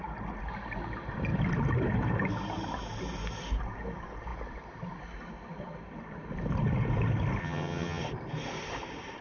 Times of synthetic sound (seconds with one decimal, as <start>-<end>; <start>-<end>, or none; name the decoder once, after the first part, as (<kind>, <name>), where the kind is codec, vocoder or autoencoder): 7.4-8.0 (vocoder, HiFi-GAN)